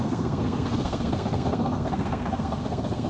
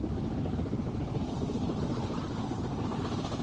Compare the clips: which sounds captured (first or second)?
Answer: second